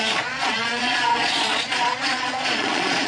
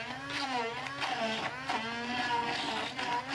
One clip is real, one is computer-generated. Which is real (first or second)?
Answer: second